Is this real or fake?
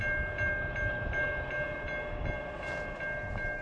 real